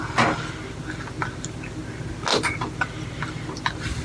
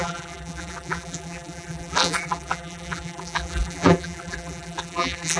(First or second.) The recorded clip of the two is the first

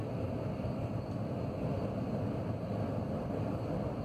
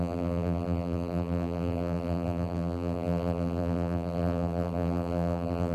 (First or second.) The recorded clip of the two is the first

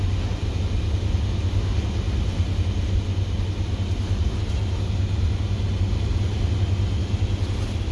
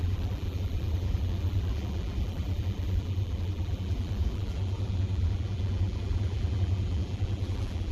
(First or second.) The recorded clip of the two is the first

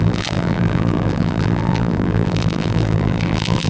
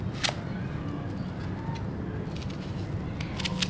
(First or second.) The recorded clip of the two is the second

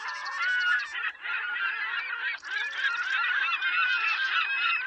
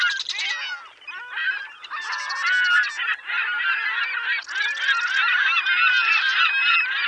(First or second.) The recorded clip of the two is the second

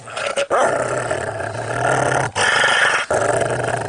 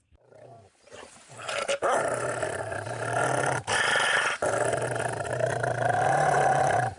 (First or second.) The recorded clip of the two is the first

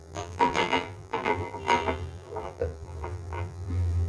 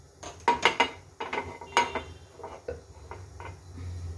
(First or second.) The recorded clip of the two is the second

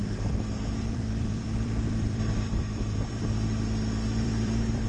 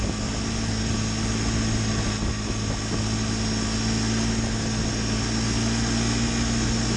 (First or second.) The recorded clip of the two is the second